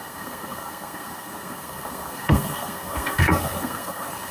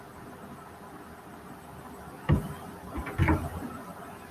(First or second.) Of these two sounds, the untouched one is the second